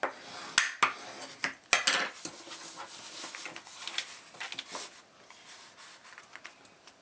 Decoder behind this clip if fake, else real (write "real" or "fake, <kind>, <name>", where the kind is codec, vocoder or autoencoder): real